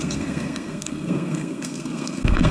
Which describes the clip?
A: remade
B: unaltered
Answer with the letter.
A